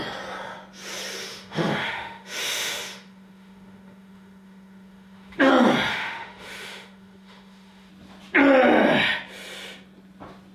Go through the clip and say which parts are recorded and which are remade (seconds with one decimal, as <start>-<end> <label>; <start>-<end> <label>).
0.0-1.2 recorded; 1.2-5.5 remade; 5.5-5.9 recorded; 5.9-7.9 remade; 7.9-10.5 recorded